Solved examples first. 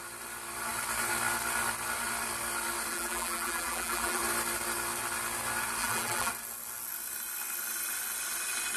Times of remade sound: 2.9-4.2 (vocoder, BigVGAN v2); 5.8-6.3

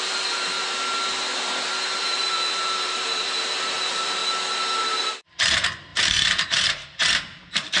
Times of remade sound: 0.0-4.2 (vocoder, BigVGAN v2); 4.8-7.8

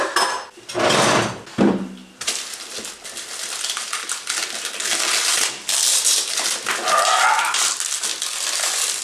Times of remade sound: none

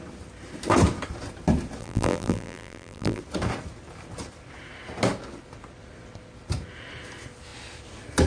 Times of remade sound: 1.8-3.2 (vocoder, BigVGAN v2)

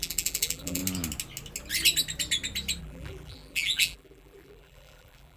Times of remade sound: 0.0-0.8 (vocoder, BigVGAN v2); 2.8-5.4

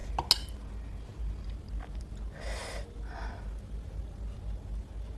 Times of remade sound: none

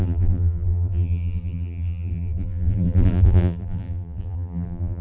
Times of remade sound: 0.0-5.0 (vocoder, BigVGAN v2)

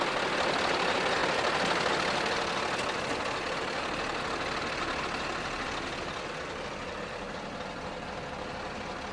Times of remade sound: none